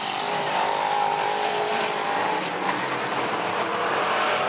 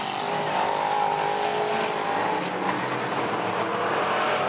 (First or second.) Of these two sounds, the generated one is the first